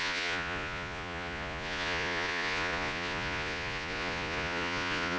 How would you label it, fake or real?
fake